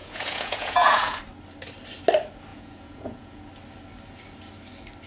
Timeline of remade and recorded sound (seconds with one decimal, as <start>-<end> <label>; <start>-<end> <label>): 0.0-1.2 remade; 1.2-2.5 recorded; 2.5-3.5 remade; 3.5-5.1 recorded